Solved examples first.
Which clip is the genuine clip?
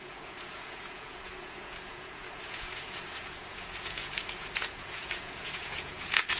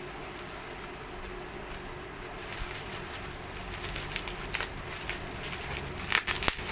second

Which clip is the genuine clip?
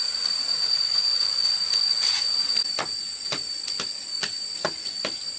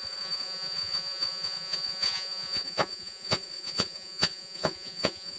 first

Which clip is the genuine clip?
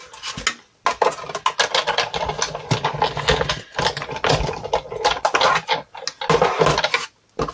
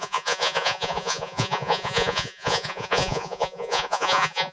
first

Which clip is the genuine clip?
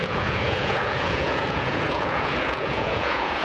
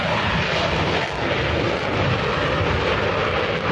second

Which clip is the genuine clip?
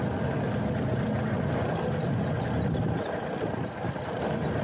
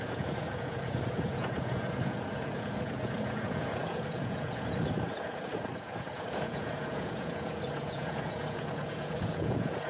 first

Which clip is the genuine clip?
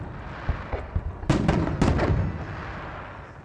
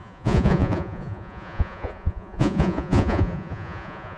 first